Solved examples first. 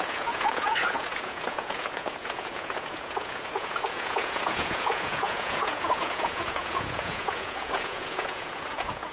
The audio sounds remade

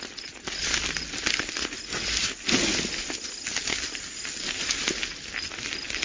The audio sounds recorded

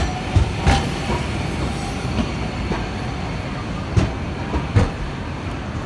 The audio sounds recorded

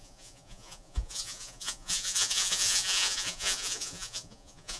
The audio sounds remade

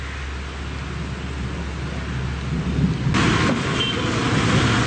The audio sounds recorded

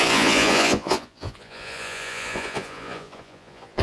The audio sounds remade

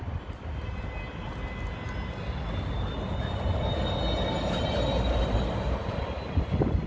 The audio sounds recorded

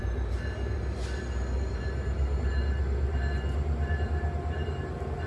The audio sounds remade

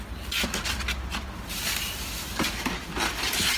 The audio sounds recorded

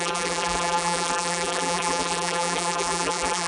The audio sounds remade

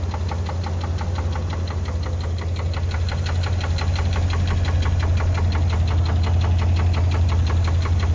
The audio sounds recorded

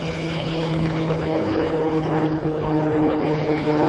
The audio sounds remade